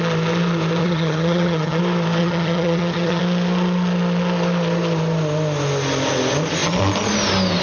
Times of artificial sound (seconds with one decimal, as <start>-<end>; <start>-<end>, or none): 0.8-1.8; 2.2-3.2